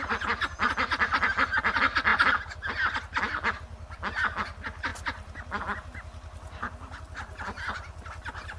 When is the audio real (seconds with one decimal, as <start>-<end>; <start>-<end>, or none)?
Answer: 0.0-8.6